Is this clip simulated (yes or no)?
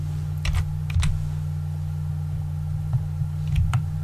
no